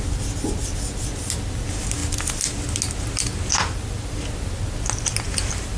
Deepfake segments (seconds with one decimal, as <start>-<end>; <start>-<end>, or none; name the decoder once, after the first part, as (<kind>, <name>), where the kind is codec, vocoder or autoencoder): none

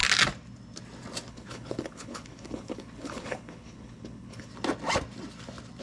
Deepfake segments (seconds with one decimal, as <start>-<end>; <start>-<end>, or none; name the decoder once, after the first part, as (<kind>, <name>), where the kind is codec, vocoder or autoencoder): 1.3-4.5 (codec, HILCodec)

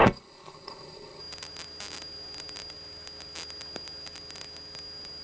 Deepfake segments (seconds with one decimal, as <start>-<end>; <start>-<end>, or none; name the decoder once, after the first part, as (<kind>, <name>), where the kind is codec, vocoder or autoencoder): 0.0-1.2 (codec, HILCodec)

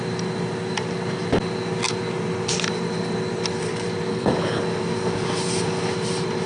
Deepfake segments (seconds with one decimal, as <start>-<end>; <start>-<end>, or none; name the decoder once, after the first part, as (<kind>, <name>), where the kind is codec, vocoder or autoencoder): 4.1-4.6 (codec, HILCodec)

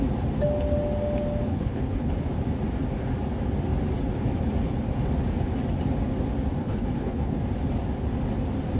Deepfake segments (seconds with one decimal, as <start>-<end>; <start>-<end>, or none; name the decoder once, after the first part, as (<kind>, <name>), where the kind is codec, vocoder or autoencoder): 1.5-2.1 (codec, HILCodec); 6.6-7.4

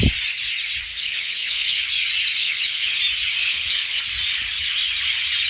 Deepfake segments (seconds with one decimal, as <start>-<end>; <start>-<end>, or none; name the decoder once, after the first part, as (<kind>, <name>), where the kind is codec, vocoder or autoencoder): 0.9-1.8 (codec, HILCodec); 2.4-3.0; 3.4-4.0

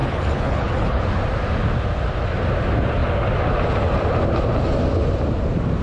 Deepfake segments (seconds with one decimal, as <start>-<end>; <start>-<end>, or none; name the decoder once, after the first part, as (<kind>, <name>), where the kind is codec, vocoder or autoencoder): 0.0-1.0 (codec, HILCodec)